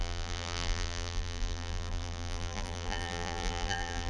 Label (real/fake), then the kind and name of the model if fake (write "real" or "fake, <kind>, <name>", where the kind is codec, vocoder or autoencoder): fake, vocoder, BigVGAN v2